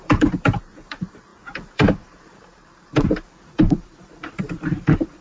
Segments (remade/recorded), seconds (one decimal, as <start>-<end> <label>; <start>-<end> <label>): 0.0-5.2 remade